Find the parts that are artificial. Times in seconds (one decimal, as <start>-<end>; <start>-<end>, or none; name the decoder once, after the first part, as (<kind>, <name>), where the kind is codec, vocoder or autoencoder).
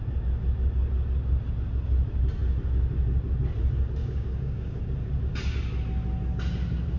4.0-4.8 (codec, DAC)